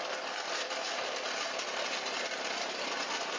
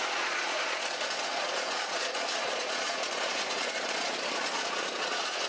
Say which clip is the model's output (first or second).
second